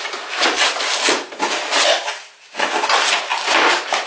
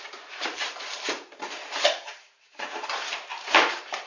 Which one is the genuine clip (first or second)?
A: first